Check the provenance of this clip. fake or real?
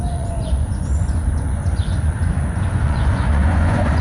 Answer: fake